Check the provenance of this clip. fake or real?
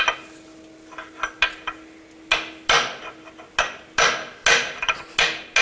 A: real